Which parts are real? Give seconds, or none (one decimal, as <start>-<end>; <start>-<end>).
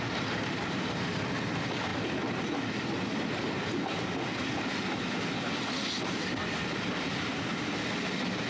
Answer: 0.0-8.5